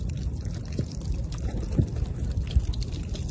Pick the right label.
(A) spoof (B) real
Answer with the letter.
B